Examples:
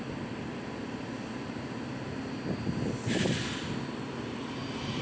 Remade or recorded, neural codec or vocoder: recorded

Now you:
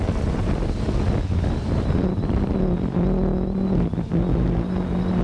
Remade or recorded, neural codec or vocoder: recorded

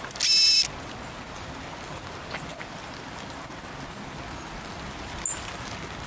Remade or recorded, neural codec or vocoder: recorded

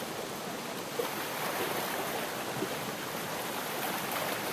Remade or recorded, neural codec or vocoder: recorded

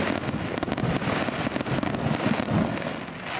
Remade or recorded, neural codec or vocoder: recorded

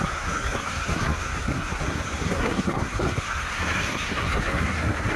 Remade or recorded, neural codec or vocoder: remade, codec, SNAC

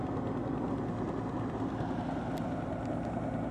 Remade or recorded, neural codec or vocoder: recorded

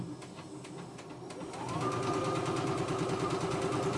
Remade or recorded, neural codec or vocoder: recorded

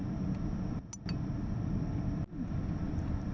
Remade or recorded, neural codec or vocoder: recorded